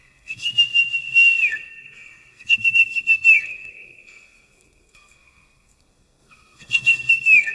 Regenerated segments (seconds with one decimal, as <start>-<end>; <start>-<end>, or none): 0.0-0.5; 1.5-7.5